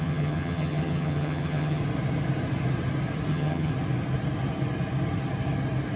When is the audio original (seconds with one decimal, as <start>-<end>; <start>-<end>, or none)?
1.8-3.3; 3.7-6.0